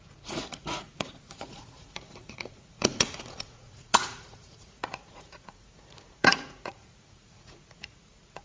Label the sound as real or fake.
fake